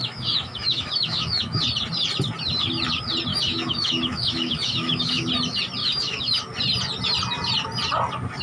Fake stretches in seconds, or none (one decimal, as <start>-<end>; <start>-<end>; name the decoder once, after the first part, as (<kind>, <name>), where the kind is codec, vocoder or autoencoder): 0.0-1.6 (autoencoder, DAC-VAE); 3.3-5.3; 5.8-6.4